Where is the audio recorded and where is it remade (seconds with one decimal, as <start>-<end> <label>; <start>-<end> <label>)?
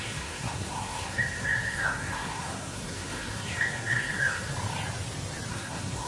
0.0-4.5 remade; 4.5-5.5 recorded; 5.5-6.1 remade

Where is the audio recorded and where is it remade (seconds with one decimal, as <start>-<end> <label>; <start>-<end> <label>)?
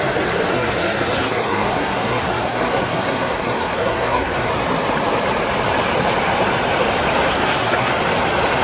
0.0-0.5 recorded; 0.5-4.5 remade; 4.5-7.3 recorded; 7.3-7.9 remade; 7.9-8.6 recorded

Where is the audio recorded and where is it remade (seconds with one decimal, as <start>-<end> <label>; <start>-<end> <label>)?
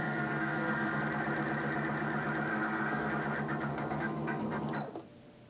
0.0-1.0 remade; 1.0-2.5 recorded; 2.5-3.1 remade; 3.1-3.7 recorded; 3.7-4.6 remade; 4.6-5.5 recorded